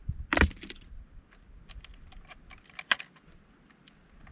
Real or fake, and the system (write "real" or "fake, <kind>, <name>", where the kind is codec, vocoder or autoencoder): real